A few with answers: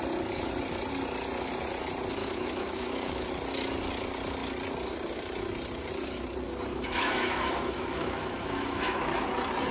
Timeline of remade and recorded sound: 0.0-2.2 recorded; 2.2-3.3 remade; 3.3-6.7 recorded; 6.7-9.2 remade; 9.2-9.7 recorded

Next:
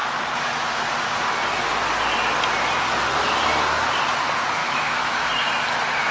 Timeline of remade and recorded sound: 0.0-4.6 recorded; 4.6-5.3 remade; 5.3-6.1 recorded